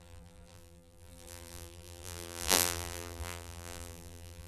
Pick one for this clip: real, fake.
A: fake